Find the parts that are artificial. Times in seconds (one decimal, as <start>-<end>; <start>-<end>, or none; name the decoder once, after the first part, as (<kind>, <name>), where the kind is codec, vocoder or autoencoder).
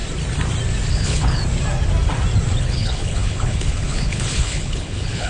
0.9-1.4 (codec, HILCodec); 2.6-5.3